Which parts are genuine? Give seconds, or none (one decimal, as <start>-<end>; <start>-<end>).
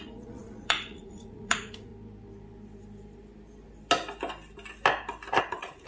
1.9-5.4